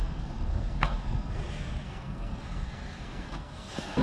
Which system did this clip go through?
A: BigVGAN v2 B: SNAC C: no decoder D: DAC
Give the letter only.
B